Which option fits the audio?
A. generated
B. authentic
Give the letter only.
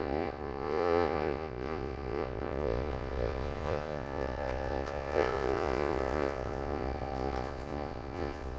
A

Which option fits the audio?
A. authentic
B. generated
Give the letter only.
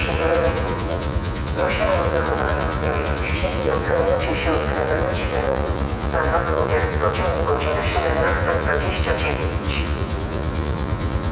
B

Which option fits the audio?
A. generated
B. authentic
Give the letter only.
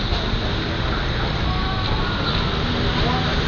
B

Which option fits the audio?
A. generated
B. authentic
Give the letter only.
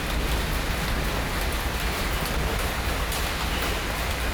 B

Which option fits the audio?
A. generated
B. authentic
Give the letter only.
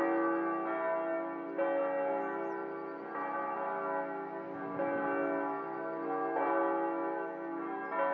B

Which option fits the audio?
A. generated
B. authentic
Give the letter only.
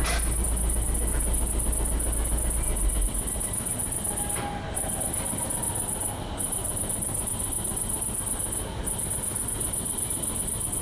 B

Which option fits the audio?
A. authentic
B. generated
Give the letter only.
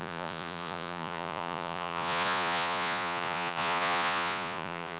B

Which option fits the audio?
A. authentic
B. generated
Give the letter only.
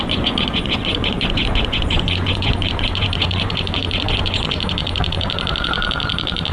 B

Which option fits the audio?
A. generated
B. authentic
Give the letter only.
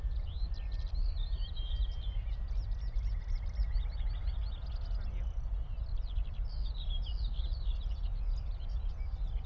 B